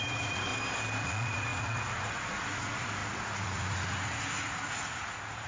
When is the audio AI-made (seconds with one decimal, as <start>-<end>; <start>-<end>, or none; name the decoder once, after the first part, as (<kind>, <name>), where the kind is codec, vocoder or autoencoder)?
0.0-0.5 (vocoder, Vocos); 1.0-5.5